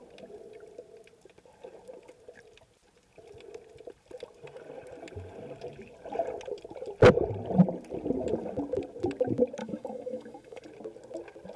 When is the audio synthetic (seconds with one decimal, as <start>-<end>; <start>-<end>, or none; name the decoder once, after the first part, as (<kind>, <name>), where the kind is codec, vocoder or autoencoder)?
9.6-10.6 (autoencoder, DAC-VAE)